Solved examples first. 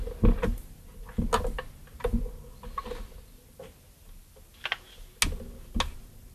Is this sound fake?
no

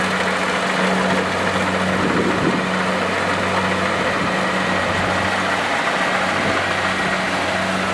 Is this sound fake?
no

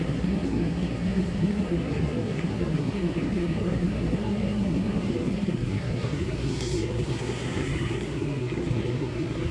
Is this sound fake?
yes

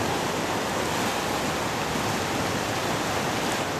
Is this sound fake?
no